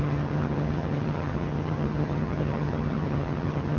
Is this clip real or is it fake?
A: fake